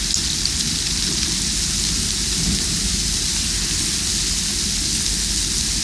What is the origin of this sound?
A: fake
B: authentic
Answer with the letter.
B